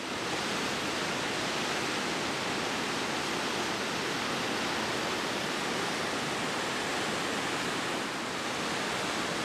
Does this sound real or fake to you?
real